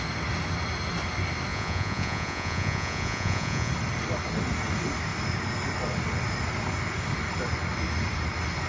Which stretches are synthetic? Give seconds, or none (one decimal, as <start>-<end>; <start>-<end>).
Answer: 1.5-3.7

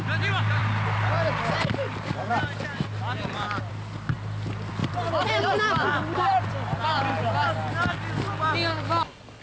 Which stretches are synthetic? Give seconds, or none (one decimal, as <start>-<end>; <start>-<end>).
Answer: 4.8-6.5

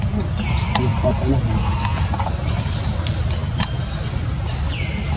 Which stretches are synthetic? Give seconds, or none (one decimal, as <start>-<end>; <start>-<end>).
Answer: none

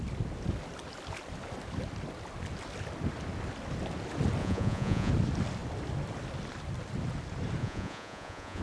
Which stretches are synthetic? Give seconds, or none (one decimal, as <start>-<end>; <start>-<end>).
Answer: 4.4-5.1; 7.6-8.6

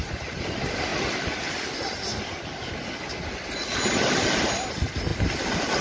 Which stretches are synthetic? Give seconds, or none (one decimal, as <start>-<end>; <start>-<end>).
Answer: none

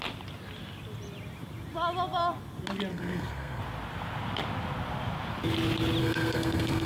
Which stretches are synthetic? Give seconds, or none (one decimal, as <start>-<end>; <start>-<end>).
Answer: 2.9-3.6; 6.0-6.9

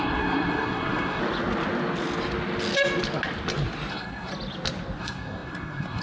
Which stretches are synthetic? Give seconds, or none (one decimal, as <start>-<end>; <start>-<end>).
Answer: 0.0-1.2; 3.9-4.3; 5.0-6.0

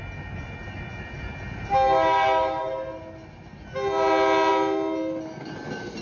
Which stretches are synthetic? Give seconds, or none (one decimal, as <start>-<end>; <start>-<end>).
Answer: none